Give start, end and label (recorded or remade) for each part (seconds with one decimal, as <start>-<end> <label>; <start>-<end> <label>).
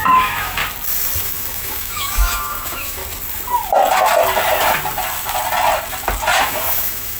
0.0-0.6 remade; 0.6-1.2 recorded; 1.2-3.0 remade; 3.0-6.4 recorded; 6.4-7.2 remade